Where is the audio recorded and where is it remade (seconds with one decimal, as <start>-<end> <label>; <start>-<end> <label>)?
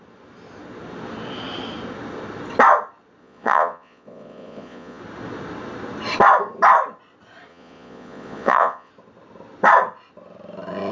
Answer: 0.0-3.2 recorded; 3.2-5.0 remade; 5.0-7.5 recorded; 7.5-8.9 remade; 8.9-10.9 recorded